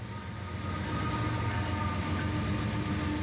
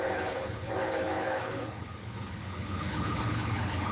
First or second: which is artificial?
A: second